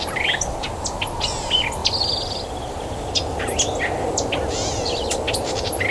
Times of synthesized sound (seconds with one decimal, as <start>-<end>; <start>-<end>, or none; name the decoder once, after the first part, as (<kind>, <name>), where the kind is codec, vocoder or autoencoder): none

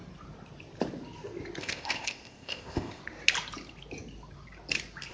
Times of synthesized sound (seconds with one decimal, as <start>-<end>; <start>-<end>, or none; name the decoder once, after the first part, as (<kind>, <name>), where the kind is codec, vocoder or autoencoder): 1.6-3.0 (codec, ZipCodec)